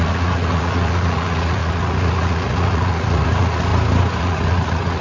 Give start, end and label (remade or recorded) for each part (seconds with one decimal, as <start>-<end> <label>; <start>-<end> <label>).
0.0-3.7 remade; 3.7-4.2 recorded; 4.2-5.0 remade